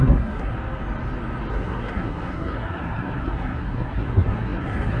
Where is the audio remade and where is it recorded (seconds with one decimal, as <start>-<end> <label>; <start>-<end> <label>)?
0.0-0.5 remade; 0.5-1.5 recorded; 1.5-5.0 remade